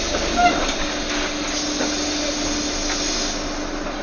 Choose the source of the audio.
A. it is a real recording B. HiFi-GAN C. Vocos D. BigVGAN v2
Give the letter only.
A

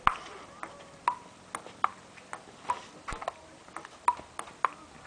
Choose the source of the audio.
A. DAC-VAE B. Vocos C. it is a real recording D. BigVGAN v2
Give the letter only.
C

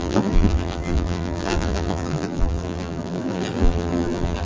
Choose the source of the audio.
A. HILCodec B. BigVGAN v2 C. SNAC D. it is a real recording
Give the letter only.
B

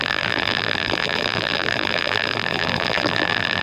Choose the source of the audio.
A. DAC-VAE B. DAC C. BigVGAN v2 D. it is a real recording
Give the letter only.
C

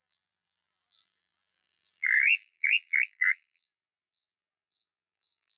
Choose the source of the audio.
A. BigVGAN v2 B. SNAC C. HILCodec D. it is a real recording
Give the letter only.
A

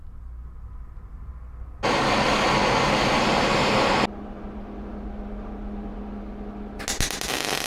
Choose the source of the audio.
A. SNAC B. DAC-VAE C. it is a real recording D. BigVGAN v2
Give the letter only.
C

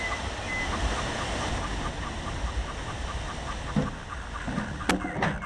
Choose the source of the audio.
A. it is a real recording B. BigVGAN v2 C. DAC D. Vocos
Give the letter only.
A